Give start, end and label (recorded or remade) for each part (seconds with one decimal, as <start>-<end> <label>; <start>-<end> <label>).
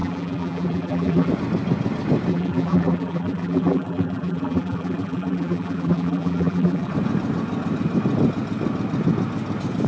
0.0-1.3 remade; 1.3-2.3 recorded; 2.3-6.9 remade; 6.9-9.9 recorded